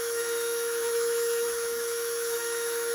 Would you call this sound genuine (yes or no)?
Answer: no